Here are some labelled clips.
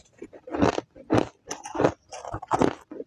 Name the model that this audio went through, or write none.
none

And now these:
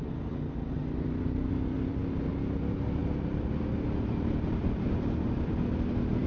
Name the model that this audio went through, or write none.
none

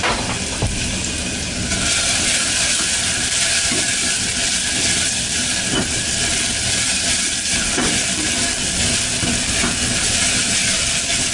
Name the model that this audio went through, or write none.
none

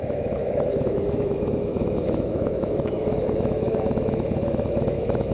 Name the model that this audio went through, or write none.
autoencoder, DAC-VAE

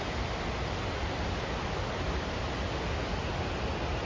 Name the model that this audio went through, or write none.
none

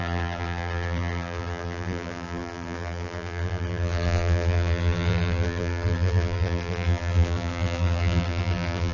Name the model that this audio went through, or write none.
vocoder, BigVGAN v2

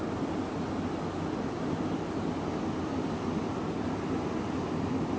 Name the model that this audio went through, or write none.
none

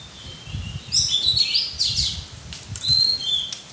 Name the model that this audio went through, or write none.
none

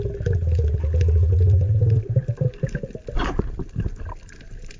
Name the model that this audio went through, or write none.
none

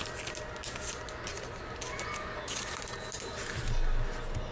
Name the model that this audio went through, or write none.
none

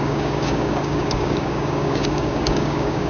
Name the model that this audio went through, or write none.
codec, DAC